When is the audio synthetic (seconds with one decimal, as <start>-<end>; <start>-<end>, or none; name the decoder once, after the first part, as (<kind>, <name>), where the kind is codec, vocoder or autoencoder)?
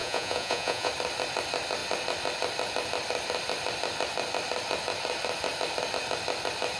0.0-0.9 (vocoder, Vocos)